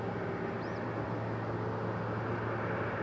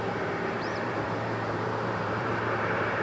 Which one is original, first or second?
first